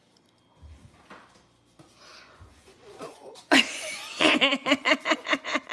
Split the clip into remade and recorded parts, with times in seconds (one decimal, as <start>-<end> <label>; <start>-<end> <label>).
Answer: 0.0-2.1 recorded; 2.1-5.7 remade